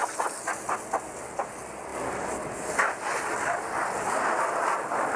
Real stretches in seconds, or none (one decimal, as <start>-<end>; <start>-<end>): 0.0-5.2